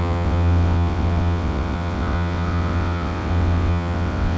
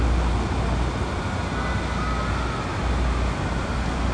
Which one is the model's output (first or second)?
first